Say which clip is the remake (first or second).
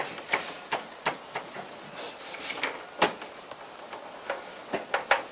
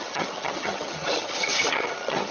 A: second